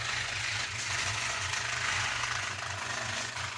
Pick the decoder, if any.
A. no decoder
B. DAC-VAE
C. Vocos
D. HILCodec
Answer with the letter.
C